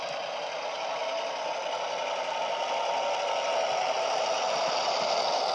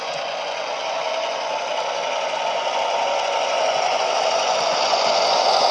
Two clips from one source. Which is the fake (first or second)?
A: second